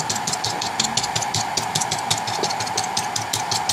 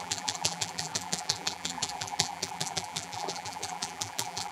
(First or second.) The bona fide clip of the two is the first